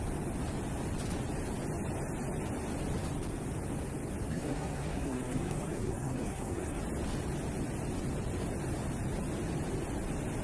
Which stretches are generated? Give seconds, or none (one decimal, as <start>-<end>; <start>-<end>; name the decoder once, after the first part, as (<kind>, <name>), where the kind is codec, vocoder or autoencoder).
4.3-6.8 (codec, SNAC)